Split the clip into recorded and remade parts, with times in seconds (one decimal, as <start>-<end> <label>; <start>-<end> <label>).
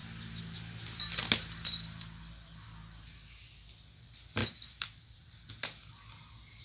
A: 0.0-4.4 recorded; 4.4-5.5 remade; 5.5-6.6 recorded